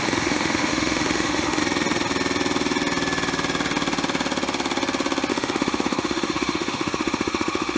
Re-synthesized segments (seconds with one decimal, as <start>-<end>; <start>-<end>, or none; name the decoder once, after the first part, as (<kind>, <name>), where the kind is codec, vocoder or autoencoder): 0.0-1.6 (autoencoder, DAC-VAE); 5.3-7.8